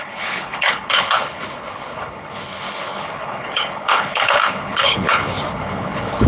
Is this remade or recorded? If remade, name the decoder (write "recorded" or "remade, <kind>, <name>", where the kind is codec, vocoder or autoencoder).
remade, codec, HILCodec